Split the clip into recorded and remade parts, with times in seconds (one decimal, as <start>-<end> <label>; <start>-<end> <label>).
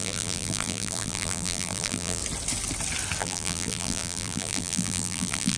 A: 0.0-2.2 remade; 2.2-3.2 recorded; 3.2-5.6 remade